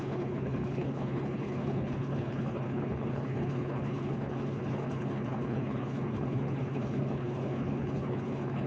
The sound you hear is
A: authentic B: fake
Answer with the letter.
B